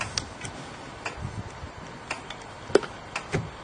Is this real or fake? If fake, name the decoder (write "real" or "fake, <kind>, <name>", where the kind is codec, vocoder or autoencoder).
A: real